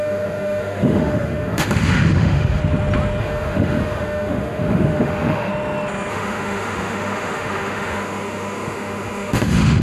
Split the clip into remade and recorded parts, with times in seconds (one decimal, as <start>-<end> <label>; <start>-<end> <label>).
0.0-2.6 remade; 2.6-3.2 recorded; 3.2-5.5 remade; 5.5-6.1 recorded; 6.1-9.8 remade